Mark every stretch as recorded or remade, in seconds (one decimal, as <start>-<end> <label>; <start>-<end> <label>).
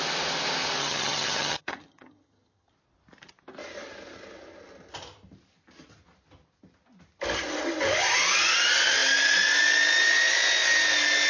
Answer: 0.0-0.8 recorded; 0.8-2.7 remade; 2.7-11.3 recorded